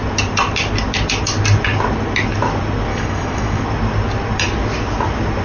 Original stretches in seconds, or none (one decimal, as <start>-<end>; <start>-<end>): 0.0-2.9; 3.6-5.4